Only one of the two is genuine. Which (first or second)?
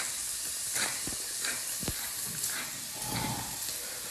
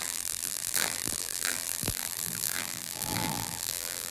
first